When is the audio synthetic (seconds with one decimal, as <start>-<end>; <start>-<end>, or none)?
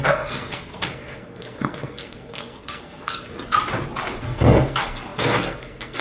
0.0-3.3; 4.2-6.0